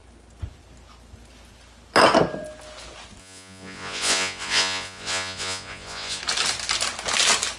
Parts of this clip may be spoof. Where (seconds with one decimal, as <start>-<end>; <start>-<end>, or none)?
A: 3.2-6.2